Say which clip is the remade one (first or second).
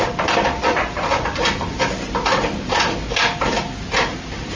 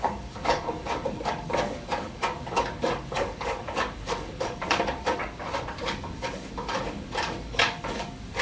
second